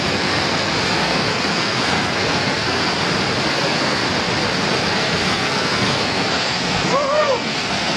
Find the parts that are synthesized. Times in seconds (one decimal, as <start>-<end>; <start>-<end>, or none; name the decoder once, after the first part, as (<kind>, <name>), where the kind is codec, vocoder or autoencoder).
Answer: 0.0-2.9 (codec, SNAC); 3.5-4.0; 4.7-8.0